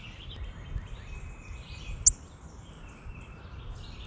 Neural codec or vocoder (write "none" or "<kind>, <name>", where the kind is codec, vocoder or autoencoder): none